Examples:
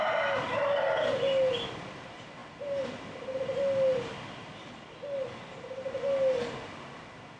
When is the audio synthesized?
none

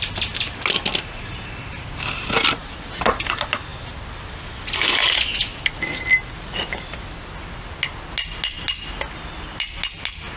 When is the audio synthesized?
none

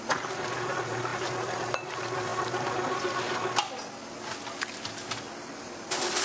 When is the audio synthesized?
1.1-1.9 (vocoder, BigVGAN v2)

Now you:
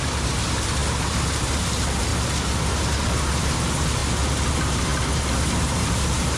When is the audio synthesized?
0.0-2.1 (vocoder, BigVGAN v2); 3.4-4.0; 4.5-4.9; 5.4-6.4

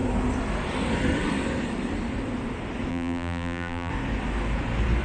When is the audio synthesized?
2.9-3.9 (vocoder, BigVGAN v2)

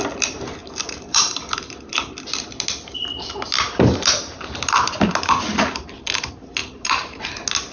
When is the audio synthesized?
0.6-1.3 (vocoder, BigVGAN v2); 6.6-7.3